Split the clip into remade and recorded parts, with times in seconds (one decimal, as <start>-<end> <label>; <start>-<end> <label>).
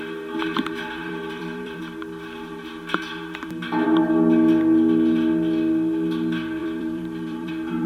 0.0-1.0 recorded; 1.0-1.8 remade; 1.8-6.6 recorded; 6.6-7.5 remade; 7.5-7.9 recorded